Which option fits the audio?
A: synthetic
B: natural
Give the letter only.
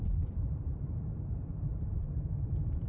A